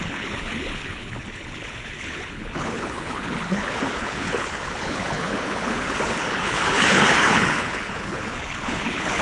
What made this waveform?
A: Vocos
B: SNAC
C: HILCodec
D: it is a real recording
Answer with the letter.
C